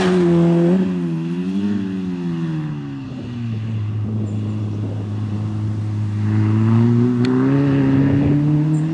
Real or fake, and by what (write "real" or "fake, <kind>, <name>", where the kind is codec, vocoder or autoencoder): real